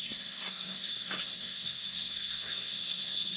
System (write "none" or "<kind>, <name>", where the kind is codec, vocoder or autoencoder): codec, SNAC